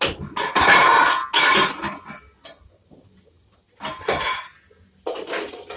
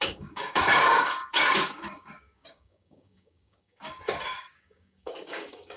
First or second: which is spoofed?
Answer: second